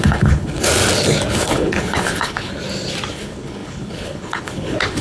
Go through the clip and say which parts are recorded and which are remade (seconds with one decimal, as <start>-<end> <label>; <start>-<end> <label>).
0.0-0.7 remade; 0.7-1.3 recorded; 1.3-2.6 remade; 2.6-3.1 recorded; 3.1-5.0 remade